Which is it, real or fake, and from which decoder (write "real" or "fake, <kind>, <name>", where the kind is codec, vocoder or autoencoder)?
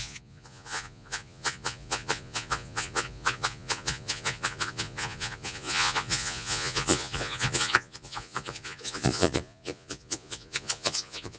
fake, vocoder, Vocos